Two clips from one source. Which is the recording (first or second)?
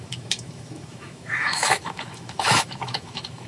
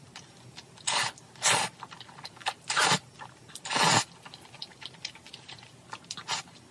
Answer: second